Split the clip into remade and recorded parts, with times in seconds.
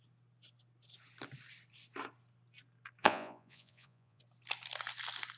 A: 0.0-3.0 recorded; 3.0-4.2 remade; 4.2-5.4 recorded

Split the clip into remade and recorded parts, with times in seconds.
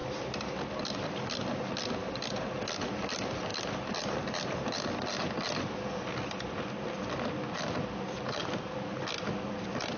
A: 0.0-10.0 recorded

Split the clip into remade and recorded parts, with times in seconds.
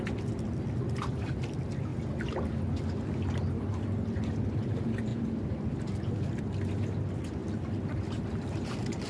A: 0.0-1.9 remade; 1.9-4.5 recorded; 4.5-9.1 remade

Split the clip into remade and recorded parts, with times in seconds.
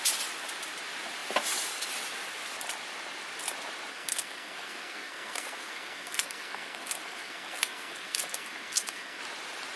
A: 0.0-3.9 recorded; 3.9-9.2 remade; 9.2-9.8 recorded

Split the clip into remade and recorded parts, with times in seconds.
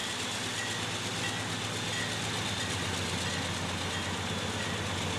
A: 0.0-5.2 recorded